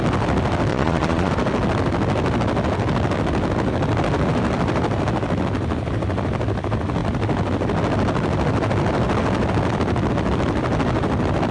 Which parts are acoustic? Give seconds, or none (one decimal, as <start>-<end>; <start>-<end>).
0.0-0.7; 1.3-11.5